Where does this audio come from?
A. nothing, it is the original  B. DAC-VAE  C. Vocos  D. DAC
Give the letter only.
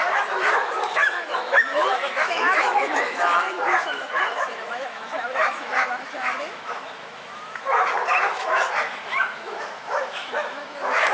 B